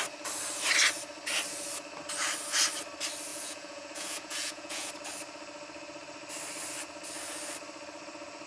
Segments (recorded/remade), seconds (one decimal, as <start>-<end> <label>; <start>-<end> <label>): 0.0-3.3 recorded; 3.3-4.9 remade; 4.9-8.5 recorded